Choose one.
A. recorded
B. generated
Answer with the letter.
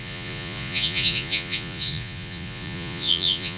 B